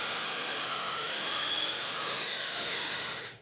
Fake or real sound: fake